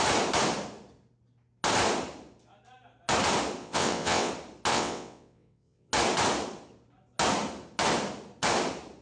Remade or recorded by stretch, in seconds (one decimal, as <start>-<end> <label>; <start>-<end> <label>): 0.0-3.6 recorded; 3.6-4.3 remade; 4.3-4.7 recorded; 4.7-5.9 remade; 5.9-9.0 recorded